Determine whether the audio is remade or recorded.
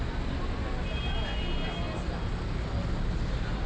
recorded